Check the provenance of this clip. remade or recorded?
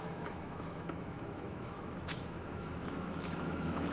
remade